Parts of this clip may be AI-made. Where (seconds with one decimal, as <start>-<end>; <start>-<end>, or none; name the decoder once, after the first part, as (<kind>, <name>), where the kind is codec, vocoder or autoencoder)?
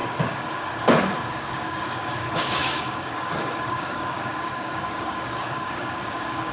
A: 0.0-6.5 (codec, DAC)